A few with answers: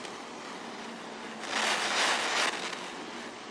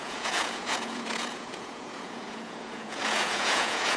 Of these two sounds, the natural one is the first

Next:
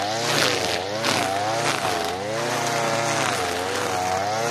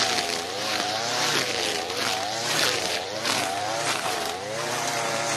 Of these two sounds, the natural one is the first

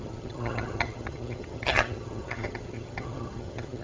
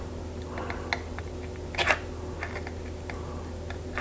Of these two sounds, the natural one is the second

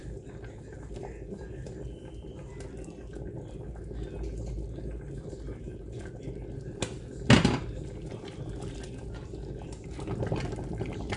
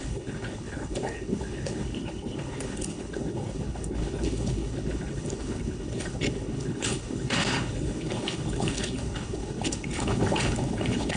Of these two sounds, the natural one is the first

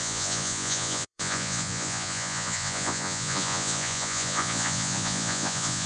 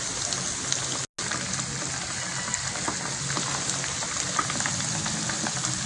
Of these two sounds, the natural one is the second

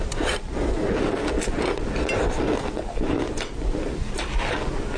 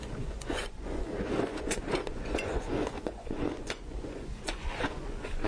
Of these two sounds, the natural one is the first